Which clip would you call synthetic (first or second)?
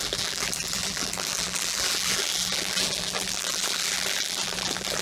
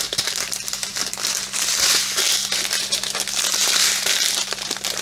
first